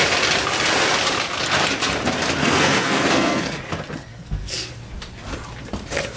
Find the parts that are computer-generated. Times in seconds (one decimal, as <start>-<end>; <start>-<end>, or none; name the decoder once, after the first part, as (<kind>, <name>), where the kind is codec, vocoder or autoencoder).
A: 2.4-3.6 (codec, SNAC); 4.1-4.7